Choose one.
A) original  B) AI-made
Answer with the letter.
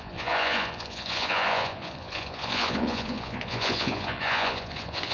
B